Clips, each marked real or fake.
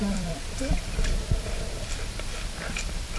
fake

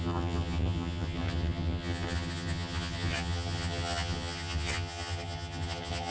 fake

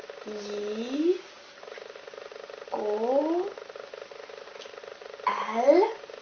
real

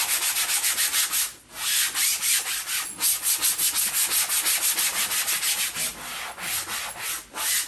real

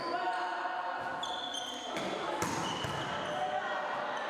real